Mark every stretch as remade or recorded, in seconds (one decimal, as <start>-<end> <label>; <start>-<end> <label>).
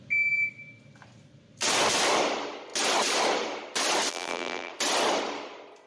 0.0-4.1 recorded; 4.1-4.7 remade; 4.7-5.9 recorded